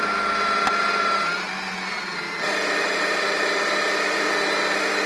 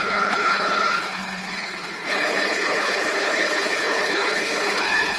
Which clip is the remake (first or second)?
second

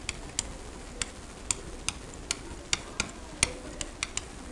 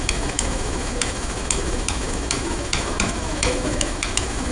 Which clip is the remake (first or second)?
second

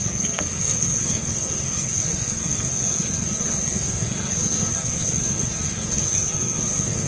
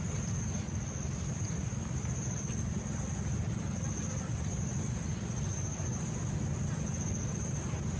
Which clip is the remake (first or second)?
first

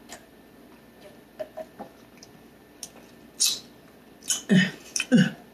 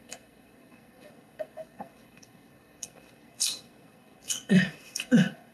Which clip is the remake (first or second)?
second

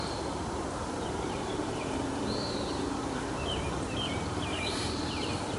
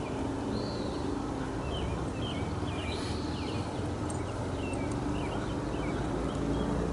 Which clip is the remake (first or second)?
first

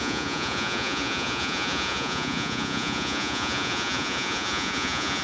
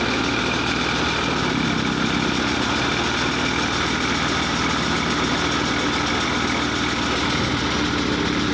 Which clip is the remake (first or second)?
first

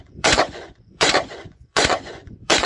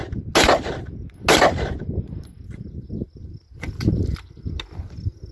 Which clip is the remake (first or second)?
first